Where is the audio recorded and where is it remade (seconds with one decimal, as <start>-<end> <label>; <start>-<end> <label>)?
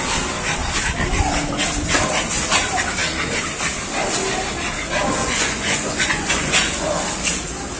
0.0-5.2 recorded; 5.2-7.0 remade; 7.0-7.8 recorded